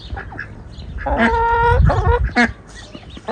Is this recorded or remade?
recorded